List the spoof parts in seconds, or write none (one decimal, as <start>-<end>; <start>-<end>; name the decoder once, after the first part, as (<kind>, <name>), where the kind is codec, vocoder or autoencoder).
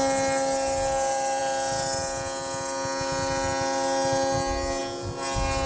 none